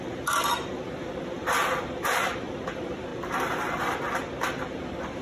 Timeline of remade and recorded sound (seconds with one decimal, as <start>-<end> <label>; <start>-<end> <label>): 0.0-3.1 remade; 3.1-4.4 recorded; 4.4-5.2 remade

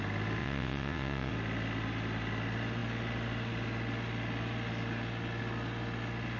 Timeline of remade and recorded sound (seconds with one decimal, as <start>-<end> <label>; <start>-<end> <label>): 0.0-0.4 recorded; 0.4-1.3 remade; 1.3-6.4 recorded

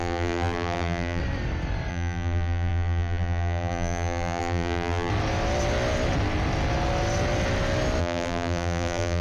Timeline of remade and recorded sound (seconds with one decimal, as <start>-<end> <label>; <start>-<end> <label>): 0.0-1.2 remade; 1.2-1.9 recorded; 1.9-5.1 remade; 5.1-8.0 recorded; 8.0-9.2 remade

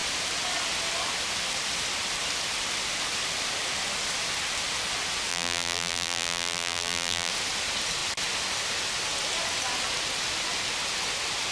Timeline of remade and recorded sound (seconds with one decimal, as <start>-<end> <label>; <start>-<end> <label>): 0.0-5.3 recorded; 5.3-7.3 remade; 7.3-11.5 recorded

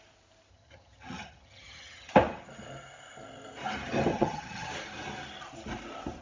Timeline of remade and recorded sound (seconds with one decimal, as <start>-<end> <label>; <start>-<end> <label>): 0.0-0.5 recorded; 0.5-2.1 remade; 2.1-4.1 recorded; 4.1-4.7 remade; 4.7-6.2 recorded